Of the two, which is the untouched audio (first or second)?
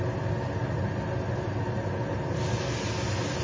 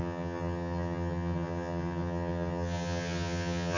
first